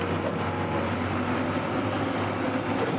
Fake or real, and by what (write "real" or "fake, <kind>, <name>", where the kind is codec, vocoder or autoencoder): real